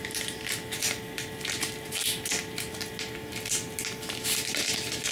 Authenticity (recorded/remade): recorded